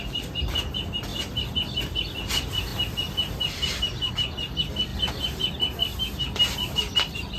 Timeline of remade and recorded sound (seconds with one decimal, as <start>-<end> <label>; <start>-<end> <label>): 0.0-7.4 recorded